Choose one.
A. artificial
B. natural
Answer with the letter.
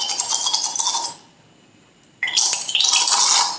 B